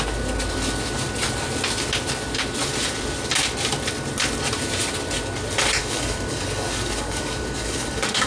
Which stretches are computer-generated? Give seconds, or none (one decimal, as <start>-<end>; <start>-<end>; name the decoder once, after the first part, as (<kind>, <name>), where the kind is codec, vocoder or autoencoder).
5.8-8.3 (codec, DAC)